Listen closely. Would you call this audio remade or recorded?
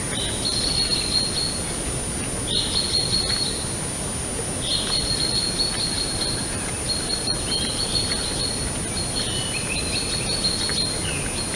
recorded